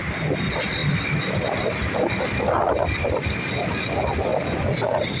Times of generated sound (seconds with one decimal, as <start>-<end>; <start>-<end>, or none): none